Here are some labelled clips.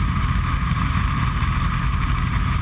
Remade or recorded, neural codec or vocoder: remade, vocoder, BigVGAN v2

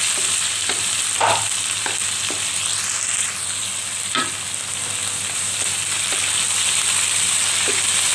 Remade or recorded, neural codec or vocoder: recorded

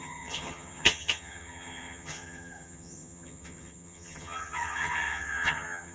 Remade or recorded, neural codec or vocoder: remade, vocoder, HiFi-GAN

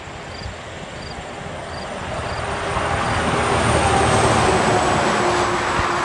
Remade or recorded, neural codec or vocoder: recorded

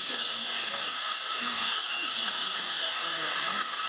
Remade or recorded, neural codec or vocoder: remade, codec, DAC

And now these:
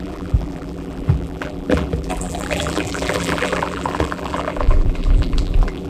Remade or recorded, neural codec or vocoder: remade, vocoder, BigVGAN v2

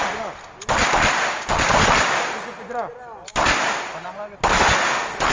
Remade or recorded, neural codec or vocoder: recorded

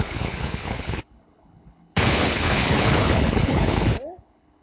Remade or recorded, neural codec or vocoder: remade, codec, HILCodec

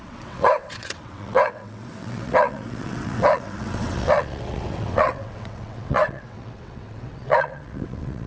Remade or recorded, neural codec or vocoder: remade, vocoder, WaveNeXt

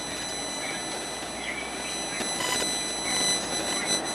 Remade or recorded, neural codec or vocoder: recorded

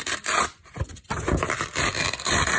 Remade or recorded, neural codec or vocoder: remade, vocoder, BigVGAN v2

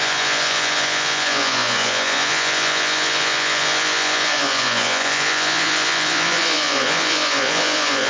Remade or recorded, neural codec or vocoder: remade, vocoder, Vocos